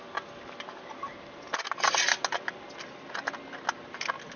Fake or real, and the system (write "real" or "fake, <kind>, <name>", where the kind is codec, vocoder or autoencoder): real